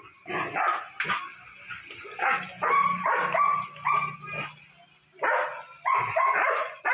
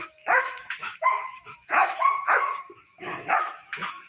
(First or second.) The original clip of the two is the first